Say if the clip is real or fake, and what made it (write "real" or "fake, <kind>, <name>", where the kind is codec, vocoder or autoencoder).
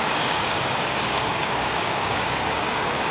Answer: fake, codec, DAC